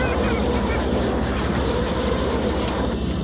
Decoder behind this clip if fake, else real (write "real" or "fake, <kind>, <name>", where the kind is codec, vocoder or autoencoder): fake, vocoder, BigVGAN v2